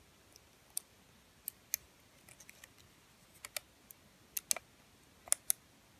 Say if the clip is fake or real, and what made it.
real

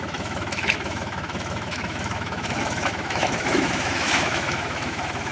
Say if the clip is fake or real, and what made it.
fake, autoencoder, DAC-VAE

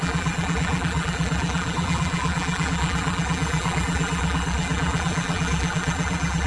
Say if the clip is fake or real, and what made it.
fake, vocoder, BigVGAN v2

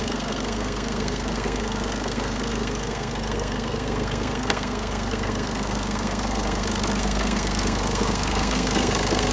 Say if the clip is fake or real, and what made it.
fake, codec, SNAC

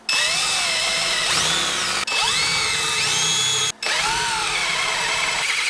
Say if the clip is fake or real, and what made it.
real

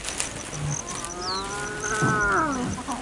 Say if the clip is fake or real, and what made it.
real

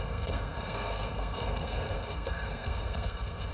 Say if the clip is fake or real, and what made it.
fake, codec, SNAC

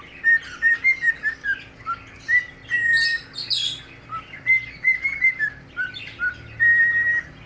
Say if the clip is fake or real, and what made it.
real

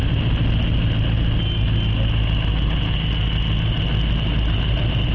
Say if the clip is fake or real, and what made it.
real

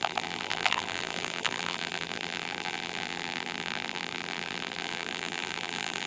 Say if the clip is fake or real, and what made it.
fake, vocoder, BigVGAN v2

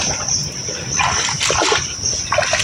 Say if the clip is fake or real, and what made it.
real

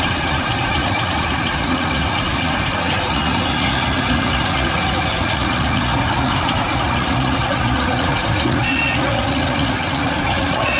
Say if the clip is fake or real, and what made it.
fake, vocoder, Vocos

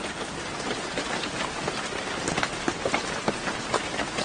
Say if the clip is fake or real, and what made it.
real